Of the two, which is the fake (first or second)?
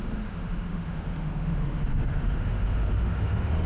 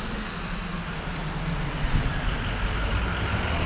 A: first